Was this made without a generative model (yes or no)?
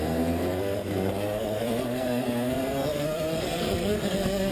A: no